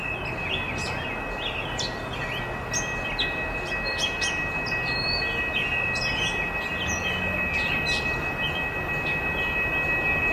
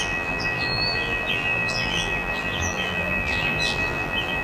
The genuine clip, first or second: first